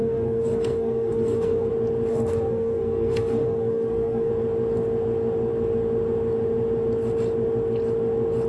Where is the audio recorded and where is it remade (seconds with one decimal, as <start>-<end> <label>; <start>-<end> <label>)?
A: 0.0-1.7 remade; 1.7-2.1 recorded; 2.1-4.3 remade; 4.3-8.5 recorded

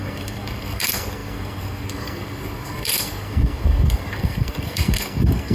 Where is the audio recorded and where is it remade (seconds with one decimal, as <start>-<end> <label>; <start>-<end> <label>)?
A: 0.0-5.5 remade

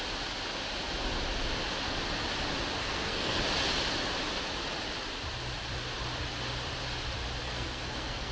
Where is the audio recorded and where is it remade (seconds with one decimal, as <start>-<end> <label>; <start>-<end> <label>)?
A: 0.0-2.8 recorded; 2.8-3.4 remade; 3.4-7.4 recorded; 7.4-8.3 remade

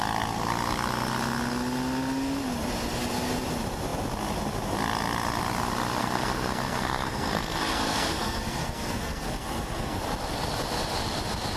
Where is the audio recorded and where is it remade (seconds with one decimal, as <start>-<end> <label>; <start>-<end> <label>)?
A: 0.0-6.0 recorded; 6.0-10.0 remade; 10.0-11.6 recorded

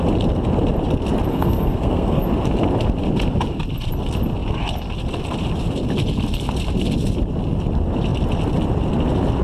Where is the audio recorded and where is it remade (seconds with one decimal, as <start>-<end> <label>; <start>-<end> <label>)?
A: 0.0-1.3 recorded; 1.3-2.2 remade; 2.2-9.4 recorded

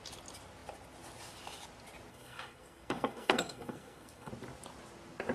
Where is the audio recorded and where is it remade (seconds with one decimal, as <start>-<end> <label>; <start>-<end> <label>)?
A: 0.0-2.1 recorded; 2.1-4.3 remade; 4.3-5.3 recorded